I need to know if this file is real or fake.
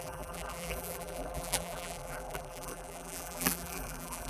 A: fake